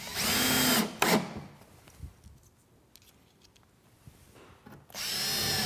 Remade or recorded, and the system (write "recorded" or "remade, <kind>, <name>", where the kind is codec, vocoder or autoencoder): recorded